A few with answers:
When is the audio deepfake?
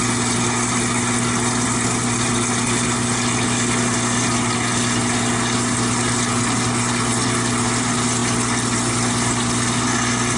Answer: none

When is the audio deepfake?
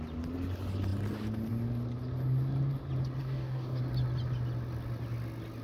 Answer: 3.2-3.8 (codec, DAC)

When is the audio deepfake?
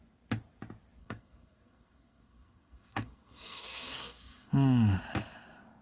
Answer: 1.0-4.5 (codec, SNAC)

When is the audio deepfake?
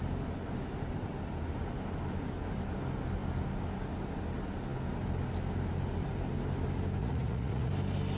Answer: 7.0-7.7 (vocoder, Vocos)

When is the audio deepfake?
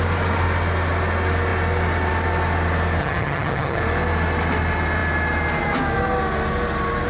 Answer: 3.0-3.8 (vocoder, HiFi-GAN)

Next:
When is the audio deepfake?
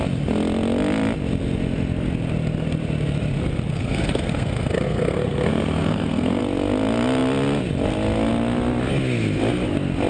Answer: 3.7-6.4 (codec, SNAC)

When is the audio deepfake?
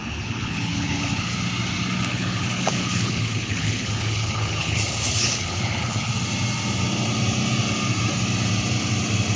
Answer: 0.0-1.4 (codec, HILCodec); 2.1-6.1